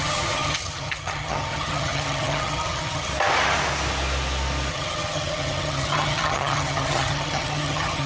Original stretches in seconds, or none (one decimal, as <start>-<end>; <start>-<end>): 3.1-4.7